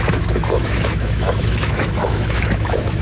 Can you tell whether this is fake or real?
fake